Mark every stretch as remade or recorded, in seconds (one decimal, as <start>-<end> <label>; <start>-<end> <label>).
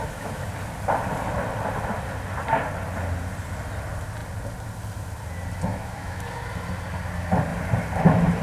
0.0-0.5 remade; 0.5-5.7 recorded; 5.7-6.2 remade; 6.2-8.4 recorded